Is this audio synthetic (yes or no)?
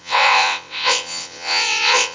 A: yes